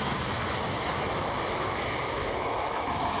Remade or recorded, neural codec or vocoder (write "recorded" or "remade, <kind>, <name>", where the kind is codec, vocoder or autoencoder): remade, autoencoder, DAC-VAE